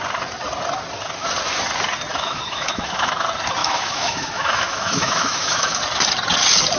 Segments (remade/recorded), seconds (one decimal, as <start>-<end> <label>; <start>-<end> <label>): 0.0-2.1 recorded; 2.1-3.1 remade; 3.1-3.6 recorded; 3.6-5.8 remade; 5.8-6.8 recorded